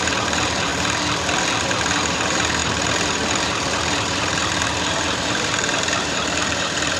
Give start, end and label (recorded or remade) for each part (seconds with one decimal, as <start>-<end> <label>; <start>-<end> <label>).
0.0-0.7 remade; 0.7-1.6 recorded; 1.6-7.0 remade